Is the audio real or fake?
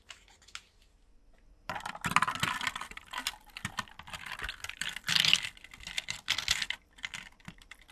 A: real